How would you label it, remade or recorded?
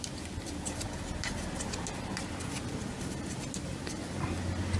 recorded